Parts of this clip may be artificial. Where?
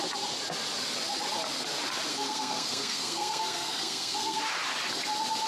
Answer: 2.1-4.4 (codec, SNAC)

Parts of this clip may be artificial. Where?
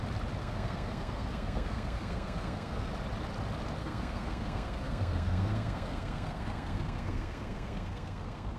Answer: 0.4-2.9 (codec, SNAC); 3.8-8.6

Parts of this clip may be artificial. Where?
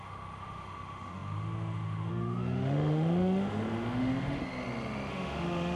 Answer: 0.0-4.4 (autoencoder, DAC-VAE); 5.1-5.8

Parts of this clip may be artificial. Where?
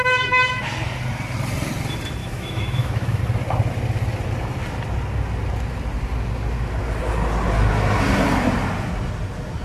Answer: 0.0-0.6 (autoencoder, DAC-VAE); 2.2-3.2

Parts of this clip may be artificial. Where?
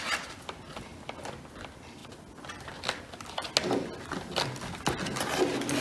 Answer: none